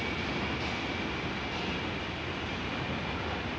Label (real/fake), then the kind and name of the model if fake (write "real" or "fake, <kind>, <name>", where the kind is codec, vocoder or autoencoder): real